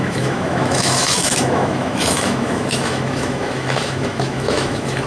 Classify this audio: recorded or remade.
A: remade